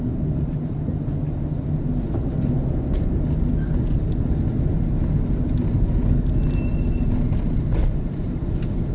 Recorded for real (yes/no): yes